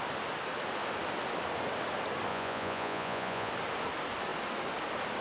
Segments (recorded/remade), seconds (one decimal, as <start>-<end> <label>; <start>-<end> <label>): 0.0-2.3 recorded; 2.3-3.5 remade; 3.5-5.2 recorded